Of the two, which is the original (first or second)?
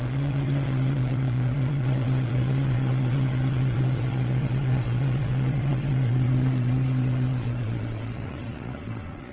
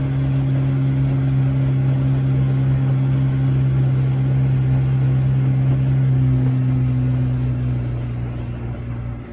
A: second